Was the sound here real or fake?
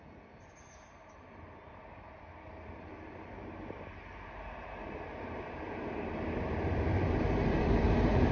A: fake